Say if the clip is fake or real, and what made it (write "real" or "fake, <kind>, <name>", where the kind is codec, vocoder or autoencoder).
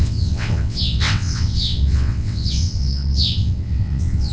fake, vocoder, WaveNeXt